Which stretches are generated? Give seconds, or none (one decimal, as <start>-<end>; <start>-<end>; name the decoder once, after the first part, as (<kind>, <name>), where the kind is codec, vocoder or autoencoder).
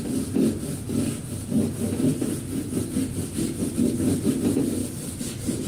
4.8-5.7 (vocoder, BigVGAN v2)